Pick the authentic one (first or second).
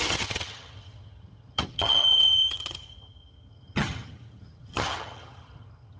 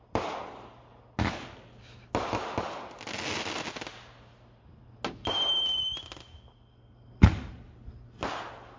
second